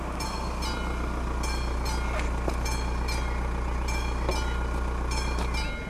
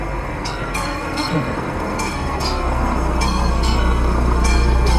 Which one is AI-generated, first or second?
second